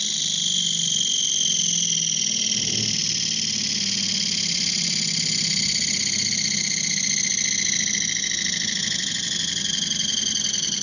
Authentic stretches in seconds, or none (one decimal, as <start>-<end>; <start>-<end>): 0.0-10.8